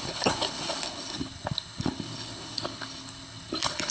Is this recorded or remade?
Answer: remade